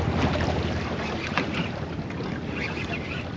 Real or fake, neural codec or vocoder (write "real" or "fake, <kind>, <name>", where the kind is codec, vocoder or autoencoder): real